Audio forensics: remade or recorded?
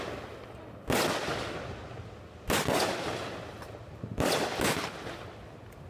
recorded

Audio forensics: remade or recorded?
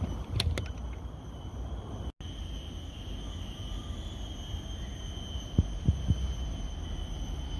recorded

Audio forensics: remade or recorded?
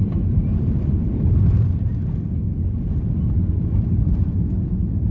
recorded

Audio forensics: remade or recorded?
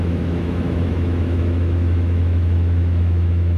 remade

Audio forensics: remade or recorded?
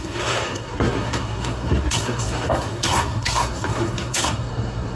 remade